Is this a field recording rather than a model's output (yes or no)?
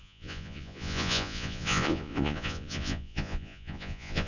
no